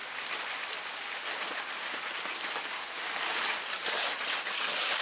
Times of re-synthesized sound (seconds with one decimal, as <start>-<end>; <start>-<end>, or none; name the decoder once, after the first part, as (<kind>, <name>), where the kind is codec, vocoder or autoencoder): 3.8-4.5 (vocoder, BigVGAN v2)